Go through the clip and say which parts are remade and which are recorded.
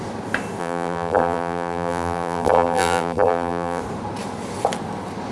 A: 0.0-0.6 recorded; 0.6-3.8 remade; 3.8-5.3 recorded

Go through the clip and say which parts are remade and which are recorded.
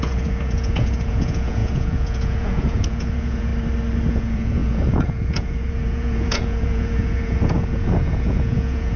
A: 0.0-3.5 remade; 3.5-4.1 recorded; 4.1-9.0 remade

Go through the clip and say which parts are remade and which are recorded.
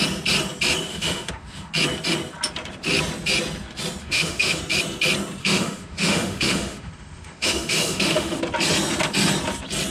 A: 0.0-0.9 recorded; 0.9-1.7 remade; 1.7-4.0 recorded; 4.0-4.6 remade; 4.6-5.4 recorded; 5.4-8.4 remade; 8.4-9.9 recorded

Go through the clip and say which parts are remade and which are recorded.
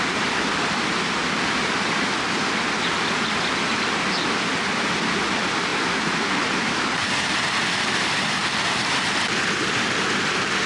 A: 0.0-5.7 recorded; 5.7-7.3 remade; 7.3-8.4 recorded; 8.4-9.1 remade; 9.1-10.7 recorded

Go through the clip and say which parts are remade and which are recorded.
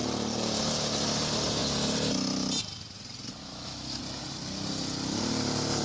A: 0.0-3.4 recorded; 3.4-4.0 remade; 4.0-5.8 recorded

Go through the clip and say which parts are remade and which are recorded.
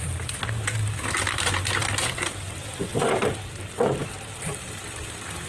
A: 0.0-2.9 recorded; 2.9-4.4 remade; 4.4-5.5 recorded